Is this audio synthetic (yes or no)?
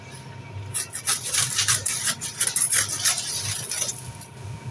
no